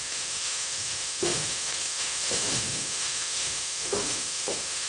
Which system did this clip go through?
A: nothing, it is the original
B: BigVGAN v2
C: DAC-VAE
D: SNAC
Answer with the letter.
C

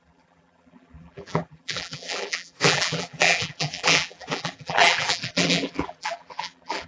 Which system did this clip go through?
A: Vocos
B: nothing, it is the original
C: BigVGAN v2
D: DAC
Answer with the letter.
C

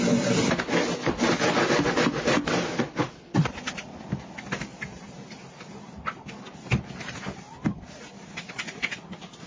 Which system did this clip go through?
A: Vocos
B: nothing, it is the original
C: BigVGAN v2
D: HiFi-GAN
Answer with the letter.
B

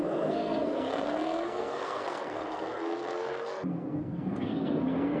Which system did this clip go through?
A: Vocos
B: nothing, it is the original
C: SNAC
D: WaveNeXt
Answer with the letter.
C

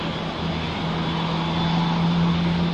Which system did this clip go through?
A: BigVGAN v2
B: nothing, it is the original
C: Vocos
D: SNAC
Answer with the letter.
B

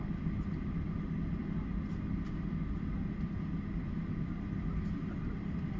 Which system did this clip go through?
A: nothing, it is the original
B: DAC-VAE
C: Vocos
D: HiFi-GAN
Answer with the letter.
A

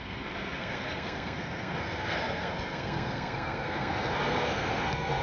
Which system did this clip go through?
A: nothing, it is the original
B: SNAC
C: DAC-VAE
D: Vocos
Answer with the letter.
B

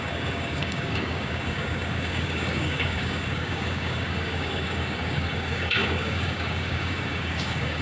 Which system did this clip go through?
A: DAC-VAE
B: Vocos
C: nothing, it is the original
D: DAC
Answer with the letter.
D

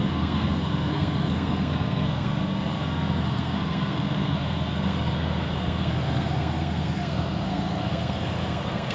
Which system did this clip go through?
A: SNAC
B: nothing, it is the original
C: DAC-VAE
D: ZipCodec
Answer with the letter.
A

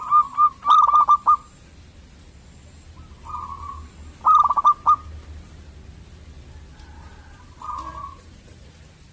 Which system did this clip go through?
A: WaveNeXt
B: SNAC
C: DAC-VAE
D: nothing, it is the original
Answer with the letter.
D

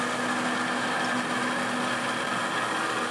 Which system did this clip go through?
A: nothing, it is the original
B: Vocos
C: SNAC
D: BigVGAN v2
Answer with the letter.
A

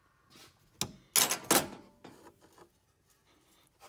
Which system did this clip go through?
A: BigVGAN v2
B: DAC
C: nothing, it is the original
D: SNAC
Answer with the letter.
C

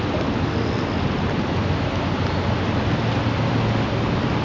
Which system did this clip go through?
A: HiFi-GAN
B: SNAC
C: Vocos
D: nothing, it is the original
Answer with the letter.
D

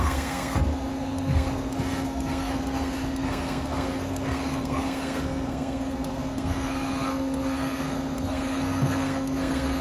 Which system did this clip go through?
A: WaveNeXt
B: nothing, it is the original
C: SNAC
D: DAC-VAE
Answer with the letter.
C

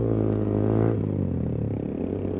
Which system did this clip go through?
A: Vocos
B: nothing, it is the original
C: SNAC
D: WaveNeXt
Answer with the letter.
B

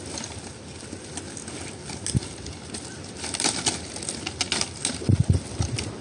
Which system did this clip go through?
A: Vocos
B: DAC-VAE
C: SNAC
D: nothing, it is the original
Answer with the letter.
D